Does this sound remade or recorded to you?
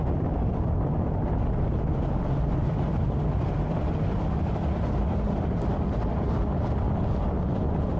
recorded